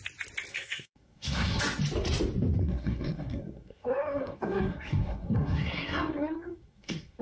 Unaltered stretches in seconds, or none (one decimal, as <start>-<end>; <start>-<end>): 0.0-0.5; 1.6-2.6